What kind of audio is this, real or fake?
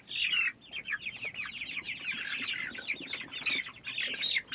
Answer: real